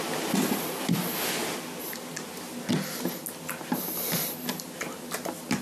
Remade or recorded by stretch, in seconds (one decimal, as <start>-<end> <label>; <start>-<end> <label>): 0.0-5.6 recorded